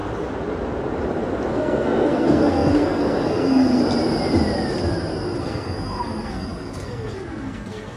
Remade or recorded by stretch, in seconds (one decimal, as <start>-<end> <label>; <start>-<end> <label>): 0.0-1.5 recorded; 1.5-3.8 remade; 3.8-5.4 recorded; 5.4-8.0 remade